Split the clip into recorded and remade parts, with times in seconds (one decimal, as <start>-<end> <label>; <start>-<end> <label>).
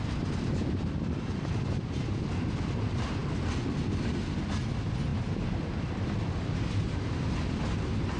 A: 0.0-0.6 recorded; 0.6-2.3 remade; 2.3-8.2 recorded